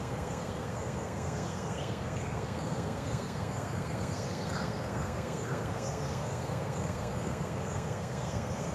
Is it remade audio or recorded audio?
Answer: remade